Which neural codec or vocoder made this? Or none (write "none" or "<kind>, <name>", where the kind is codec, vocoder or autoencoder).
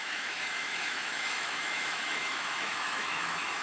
autoencoder, DAC-VAE